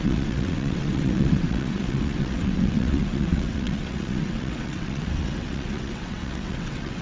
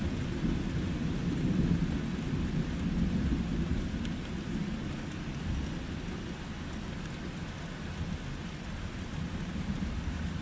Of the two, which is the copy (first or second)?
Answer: first